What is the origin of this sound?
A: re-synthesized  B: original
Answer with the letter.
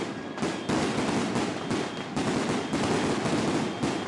B